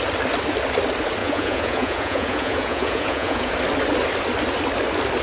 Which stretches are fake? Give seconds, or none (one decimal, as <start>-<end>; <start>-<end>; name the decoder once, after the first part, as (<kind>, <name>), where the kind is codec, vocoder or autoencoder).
1.2-3.5 (vocoder, Vocos)